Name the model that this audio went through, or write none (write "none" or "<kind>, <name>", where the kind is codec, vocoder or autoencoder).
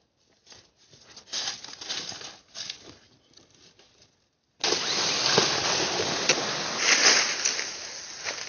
none